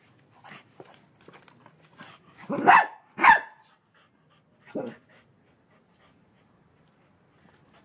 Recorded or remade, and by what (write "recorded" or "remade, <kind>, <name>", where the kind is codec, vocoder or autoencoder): recorded